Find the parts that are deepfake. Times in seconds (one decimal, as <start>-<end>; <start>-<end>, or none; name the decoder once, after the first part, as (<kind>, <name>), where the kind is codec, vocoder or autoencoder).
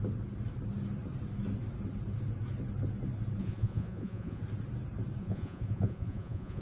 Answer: 3.4-4.4 (vocoder, Vocos); 5.2-6.6